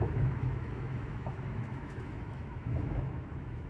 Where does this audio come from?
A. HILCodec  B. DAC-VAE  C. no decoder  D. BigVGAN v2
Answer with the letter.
B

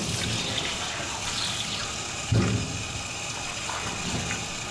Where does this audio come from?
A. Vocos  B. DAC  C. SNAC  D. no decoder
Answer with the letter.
D